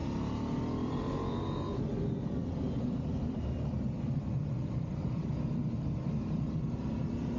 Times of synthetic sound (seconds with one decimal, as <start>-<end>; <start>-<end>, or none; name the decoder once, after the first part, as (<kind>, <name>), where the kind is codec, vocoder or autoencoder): 2.4-5.4 (vocoder, BigVGAN v2)